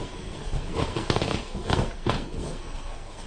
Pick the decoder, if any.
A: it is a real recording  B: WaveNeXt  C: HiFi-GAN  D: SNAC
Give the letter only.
D